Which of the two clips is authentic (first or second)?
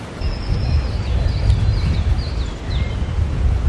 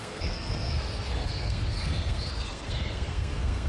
first